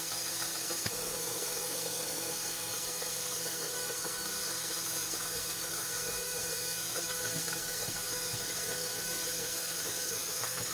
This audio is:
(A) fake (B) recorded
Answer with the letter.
A